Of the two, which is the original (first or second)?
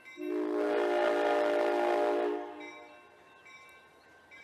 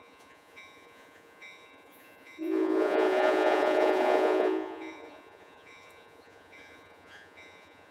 first